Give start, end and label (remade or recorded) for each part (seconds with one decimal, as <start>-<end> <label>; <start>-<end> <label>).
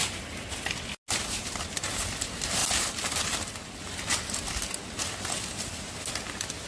0.0-6.7 recorded